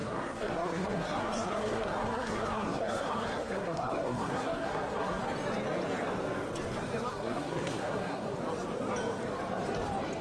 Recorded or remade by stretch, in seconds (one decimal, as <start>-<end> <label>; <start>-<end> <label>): 0.0-5.2 remade; 5.2-7.1 recorded; 7.1-8.4 remade; 8.4-10.2 recorded